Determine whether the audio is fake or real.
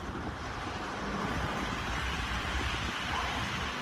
fake